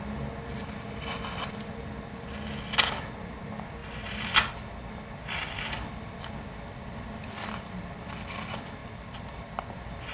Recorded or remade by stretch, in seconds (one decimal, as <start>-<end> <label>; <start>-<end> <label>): 0.0-10.1 recorded